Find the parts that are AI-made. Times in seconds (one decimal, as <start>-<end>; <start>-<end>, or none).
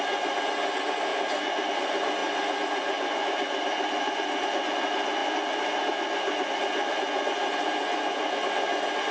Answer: 2.2-4.3; 5.2-6.6